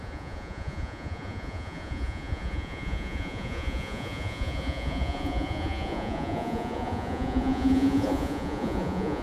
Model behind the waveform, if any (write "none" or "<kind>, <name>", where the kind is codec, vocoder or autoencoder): vocoder, Vocos